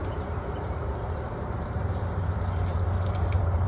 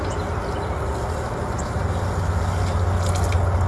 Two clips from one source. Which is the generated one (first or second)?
first